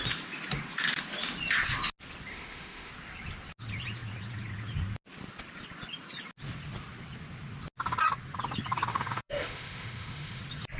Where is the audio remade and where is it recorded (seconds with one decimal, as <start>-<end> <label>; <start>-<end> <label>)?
0.0-2.3 recorded; 2.3-2.9 remade; 2.9-8.9 recorded; 8.9-10.4 remade; 10.4-10.8 recorded